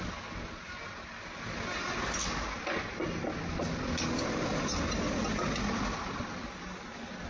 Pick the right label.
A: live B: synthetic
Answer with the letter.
A